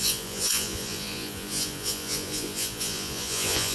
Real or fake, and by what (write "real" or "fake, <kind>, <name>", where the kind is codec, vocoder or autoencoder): fake, vocoder, Vocos